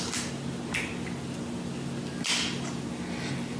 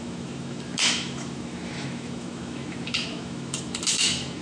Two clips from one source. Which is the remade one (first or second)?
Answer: second